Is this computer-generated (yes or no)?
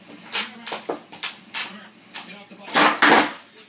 no